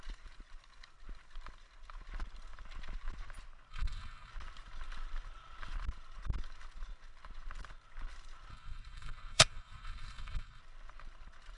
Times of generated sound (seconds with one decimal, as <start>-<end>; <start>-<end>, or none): 3.7-4.3; 8.5-10.6